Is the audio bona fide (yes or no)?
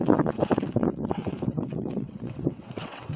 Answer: no